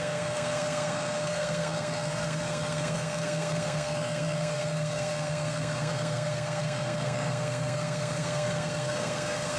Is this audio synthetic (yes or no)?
yes